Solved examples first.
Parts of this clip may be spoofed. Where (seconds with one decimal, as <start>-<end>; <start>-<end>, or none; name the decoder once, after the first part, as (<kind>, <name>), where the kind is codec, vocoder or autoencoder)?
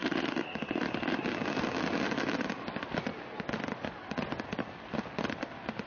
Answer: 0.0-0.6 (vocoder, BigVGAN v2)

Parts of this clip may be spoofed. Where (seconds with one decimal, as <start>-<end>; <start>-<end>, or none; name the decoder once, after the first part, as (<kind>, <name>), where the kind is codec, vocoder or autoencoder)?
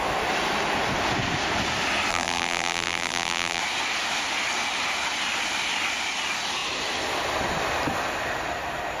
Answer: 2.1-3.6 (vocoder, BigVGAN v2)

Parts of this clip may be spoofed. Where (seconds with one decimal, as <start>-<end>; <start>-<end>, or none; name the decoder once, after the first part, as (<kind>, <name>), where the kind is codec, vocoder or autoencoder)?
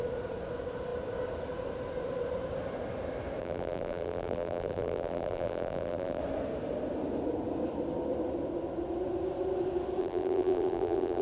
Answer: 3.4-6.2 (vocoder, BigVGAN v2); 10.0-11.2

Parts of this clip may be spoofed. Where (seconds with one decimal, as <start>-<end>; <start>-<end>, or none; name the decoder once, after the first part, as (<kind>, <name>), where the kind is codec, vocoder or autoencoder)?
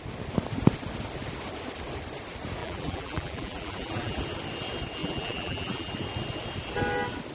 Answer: 2.6-4.2 (vocoder, BigVGAN v2); 5.0-5.9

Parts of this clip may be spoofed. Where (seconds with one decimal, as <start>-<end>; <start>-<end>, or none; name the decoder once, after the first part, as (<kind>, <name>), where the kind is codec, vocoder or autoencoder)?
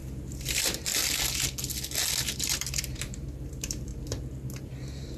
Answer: 0.0-0.9 (vocoder, BigVGAN v2); 2.4-3.9; 4.6-5.2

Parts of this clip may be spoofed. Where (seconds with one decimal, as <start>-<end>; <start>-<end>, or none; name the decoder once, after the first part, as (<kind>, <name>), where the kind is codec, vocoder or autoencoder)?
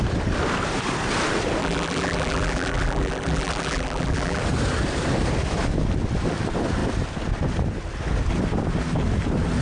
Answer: 1.6-4.4 (vocoder, BigVGAN v2)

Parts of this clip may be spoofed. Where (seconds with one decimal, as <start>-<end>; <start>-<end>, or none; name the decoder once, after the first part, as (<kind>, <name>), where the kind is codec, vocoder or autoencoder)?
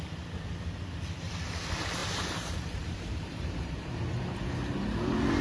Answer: 2.0-3.7 (vocoder, BigVGAN v2)